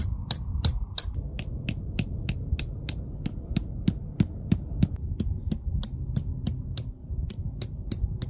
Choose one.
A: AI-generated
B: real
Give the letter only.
B